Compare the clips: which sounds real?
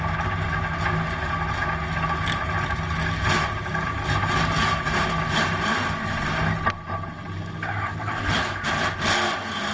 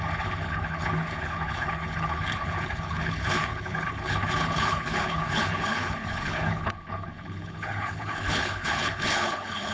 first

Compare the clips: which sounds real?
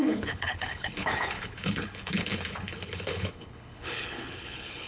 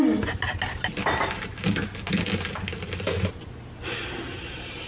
second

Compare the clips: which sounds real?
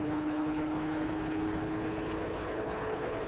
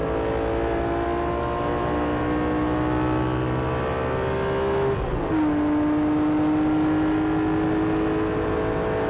second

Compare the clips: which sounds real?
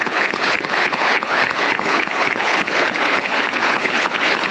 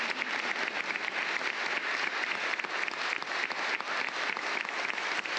second